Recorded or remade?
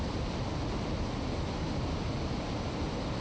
recorded